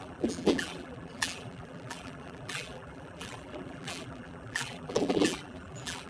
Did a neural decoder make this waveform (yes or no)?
yes